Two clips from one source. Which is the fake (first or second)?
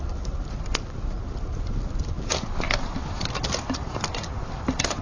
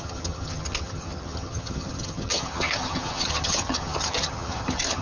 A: second